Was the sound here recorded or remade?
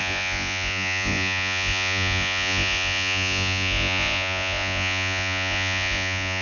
remade